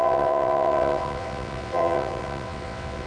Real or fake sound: fake